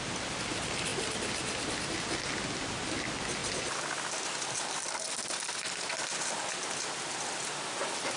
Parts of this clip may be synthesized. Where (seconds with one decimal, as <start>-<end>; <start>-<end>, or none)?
none